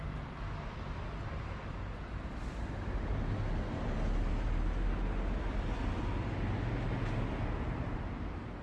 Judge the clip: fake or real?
real